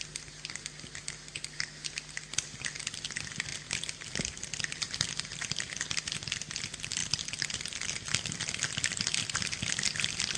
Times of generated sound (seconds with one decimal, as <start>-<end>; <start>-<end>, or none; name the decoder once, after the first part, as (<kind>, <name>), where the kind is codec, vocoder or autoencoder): none